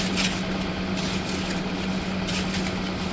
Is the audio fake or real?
real